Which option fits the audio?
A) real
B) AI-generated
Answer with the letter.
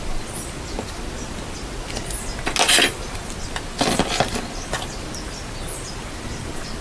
A